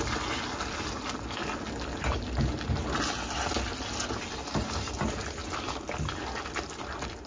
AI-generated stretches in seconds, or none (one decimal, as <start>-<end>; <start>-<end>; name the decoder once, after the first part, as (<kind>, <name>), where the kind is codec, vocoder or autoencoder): none